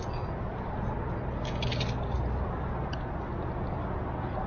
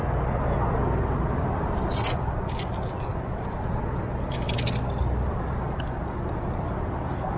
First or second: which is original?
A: first